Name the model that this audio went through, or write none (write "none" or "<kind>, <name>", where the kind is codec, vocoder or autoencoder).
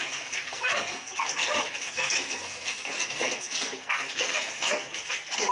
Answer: codec, SNAC